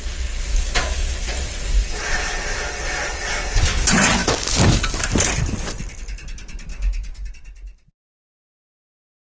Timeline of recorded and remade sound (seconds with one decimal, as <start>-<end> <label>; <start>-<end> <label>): 0.0-0.5 recorded; 0.5-1.1 remade; 1.1-4.2 recorded; 4.2-5.1 remade; 5.1-6.7 recorded; 6.7-7.3 remade; 7.3-9.4 recorded